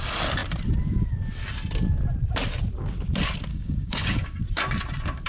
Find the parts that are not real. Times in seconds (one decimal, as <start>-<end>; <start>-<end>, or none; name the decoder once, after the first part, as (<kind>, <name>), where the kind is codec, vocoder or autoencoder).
3.5-4.4 (codec, DAC)